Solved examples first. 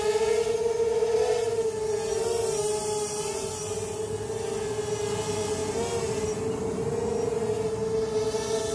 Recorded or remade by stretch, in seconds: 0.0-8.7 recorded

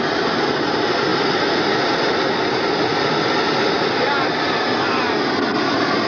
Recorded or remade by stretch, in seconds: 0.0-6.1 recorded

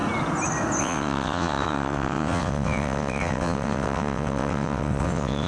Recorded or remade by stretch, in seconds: 0.0-0.8 recorded; 0.8-5.5 remade

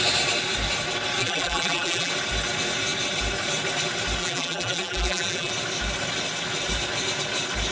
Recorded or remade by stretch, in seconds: 0.0-1.2 recorded; 1.2-2.1 remade; 2.1-4.2 recorded; 4.2-5.5 remade; 5.5-7.7 recorded

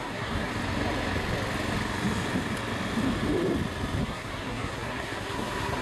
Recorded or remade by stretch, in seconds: 0.0-0.5 remade; 0.5-4.0 recorded; 4.0-5.8 remade

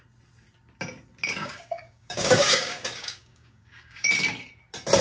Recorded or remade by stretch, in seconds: 0.0-1.4 recorded; 1.4-4.1 remade; 4.1-5.0 recorded

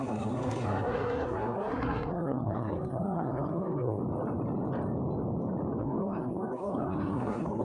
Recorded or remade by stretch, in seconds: 0.0-4.0 remade; 4.0-5.8 recorded; 5.8-7.6 remade

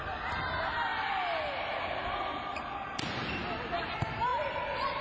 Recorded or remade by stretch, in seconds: 0.0-4.3 recorded; 4.3-5.0 remade